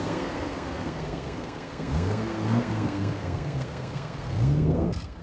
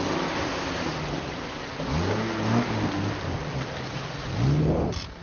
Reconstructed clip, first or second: first